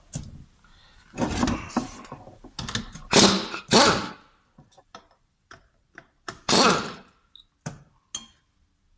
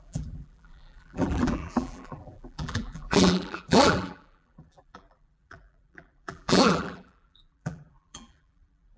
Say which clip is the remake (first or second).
second